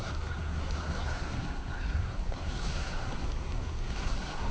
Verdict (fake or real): fake